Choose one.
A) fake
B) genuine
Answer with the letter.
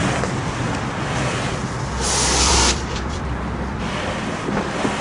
A